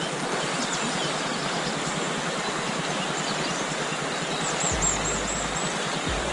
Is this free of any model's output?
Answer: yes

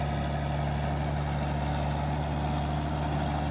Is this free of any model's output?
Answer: yes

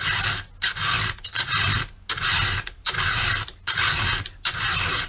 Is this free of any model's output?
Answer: yes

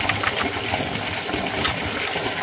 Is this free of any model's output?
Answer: yes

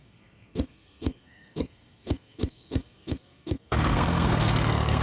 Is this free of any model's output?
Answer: no